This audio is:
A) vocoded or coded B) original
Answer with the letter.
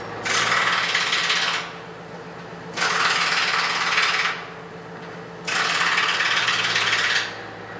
B